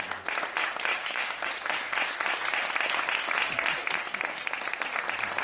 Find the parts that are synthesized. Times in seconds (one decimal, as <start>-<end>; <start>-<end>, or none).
0.9-1.5